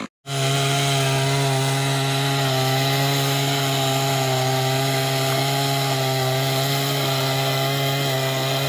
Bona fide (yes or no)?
yes